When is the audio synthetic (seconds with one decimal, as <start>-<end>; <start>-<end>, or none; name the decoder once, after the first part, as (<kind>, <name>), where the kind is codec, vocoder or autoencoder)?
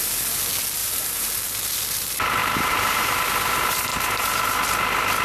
0.8-1.3 (vocoder, BigVGAN v2); 2.4-3.4